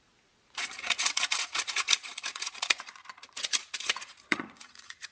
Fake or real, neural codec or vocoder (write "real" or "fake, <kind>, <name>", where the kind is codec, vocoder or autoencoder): fake, vocoder, Vocos